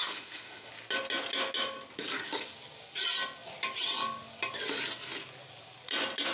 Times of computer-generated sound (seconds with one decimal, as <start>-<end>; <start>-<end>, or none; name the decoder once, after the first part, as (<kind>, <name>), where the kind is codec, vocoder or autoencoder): 0.0-0.7 (autoencoder, DAC-VAE)